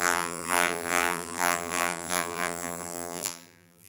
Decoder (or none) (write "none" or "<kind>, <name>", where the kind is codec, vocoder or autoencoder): vocoder, BigVGAN v2